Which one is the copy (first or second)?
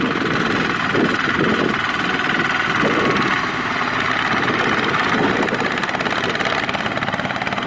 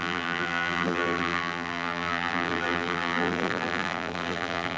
second